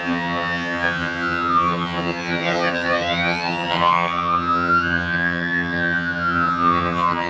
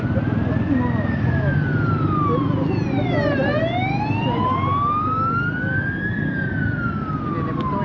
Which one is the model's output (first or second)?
first